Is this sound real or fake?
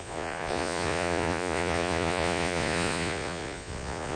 fake